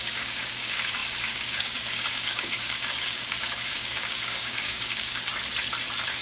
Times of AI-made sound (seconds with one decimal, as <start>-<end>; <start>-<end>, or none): 0.0-5.3